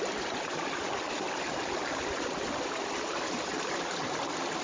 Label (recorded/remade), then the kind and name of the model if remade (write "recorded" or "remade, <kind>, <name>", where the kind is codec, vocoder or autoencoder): recorded